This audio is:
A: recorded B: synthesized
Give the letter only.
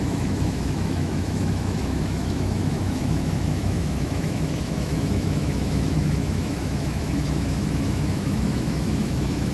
B